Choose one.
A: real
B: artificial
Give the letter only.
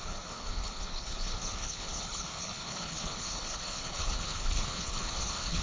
B